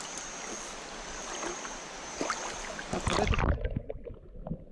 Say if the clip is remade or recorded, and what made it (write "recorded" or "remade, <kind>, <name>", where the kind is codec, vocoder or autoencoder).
remade, vocoder, BigVGAN v2